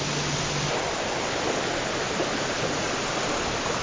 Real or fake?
real